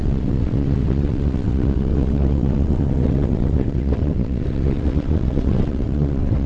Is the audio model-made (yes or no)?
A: yes